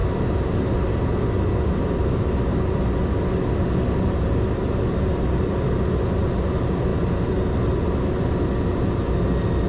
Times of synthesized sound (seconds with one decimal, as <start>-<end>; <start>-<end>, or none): none